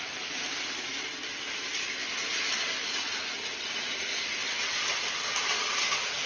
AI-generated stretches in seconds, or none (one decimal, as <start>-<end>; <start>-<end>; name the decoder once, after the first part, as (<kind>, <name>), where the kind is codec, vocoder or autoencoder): none